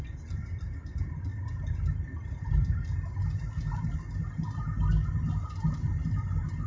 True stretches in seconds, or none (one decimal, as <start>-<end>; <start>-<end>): 0.0-6.7